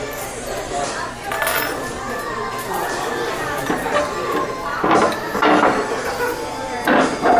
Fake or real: real